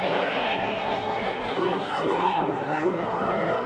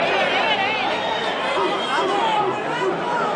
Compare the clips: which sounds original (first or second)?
second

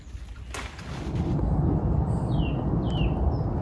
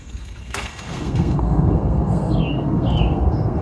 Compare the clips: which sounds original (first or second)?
first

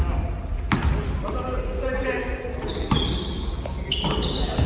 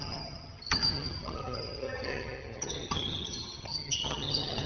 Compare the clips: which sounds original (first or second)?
first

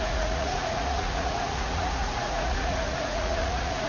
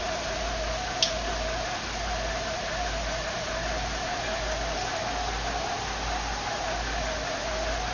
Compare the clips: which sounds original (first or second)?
second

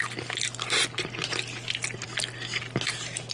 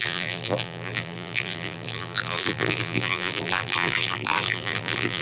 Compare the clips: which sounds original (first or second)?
first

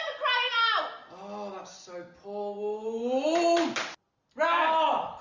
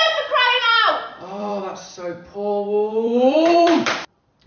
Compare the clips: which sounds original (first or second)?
first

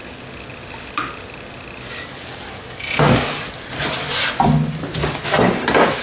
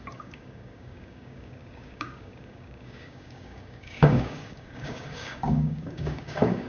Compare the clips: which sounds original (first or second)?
first